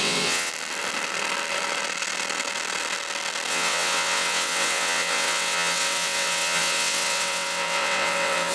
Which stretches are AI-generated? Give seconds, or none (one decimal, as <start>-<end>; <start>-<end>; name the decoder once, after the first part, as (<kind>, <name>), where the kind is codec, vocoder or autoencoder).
0.0-0.5 (vocoder, WaveNeXt); 3.5-8.5

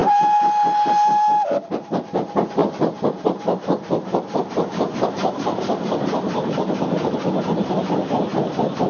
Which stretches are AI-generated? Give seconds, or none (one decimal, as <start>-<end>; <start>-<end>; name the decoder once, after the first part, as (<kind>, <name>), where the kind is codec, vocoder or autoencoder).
0.0-1.7 (vocoder, BigVGAN v2); 2.6-7.7